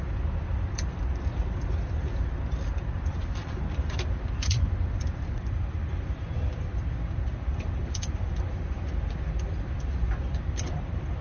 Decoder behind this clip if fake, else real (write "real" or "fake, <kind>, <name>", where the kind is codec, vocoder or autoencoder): fake, vocoder, BigVGAN v2